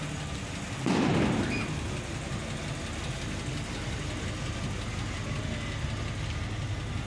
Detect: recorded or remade recorded